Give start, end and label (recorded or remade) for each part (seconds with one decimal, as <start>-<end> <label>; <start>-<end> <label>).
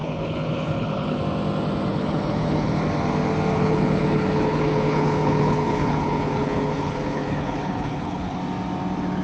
0.0-1.2 remade; 1.2-1.9 recorded; 1.9-2.8 remade; 2.8-3.5 recorded; 3.5-8.4 remade; 8.4-9.2 recorded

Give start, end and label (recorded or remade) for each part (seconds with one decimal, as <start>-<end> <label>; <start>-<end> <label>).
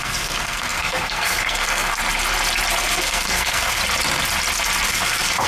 0.0-2.0 remade; 2.0-2.8 recorded; 2.8-3.8 remade; 3.8-4.9 recorded; 4.9-5.5 remade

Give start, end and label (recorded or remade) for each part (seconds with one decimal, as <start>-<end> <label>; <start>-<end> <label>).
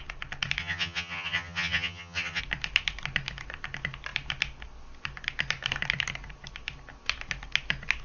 0.0-0.6 recorded; 0.6-2.4 remade; 2.4-8.0 recorded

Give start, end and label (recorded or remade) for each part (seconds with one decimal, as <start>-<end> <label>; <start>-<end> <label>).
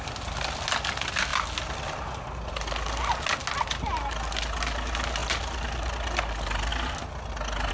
0.0-7.7 recorded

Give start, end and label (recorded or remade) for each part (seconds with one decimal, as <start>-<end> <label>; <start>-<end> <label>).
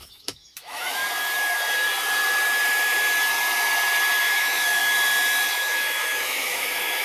0.0-1.0 remade; 1.0-4.2 recorded; 4.2-4.8 remade; 4.8-5.5 recorded; 5.5-7.0 remade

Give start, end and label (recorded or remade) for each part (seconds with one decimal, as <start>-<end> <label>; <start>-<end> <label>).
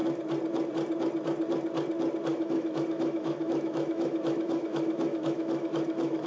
0.0-2.3 recorded; 2.3-6.3 remade